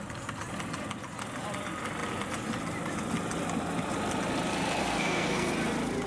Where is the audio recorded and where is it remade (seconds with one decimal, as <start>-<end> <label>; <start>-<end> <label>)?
0.0-4.8 recorded; 4.8-5.5 remade; 5.5-6.1 recorded